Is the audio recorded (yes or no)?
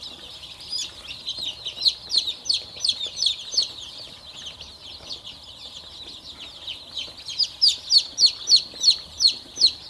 yes